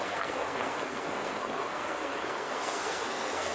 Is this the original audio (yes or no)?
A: no